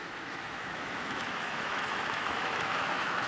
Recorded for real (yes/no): no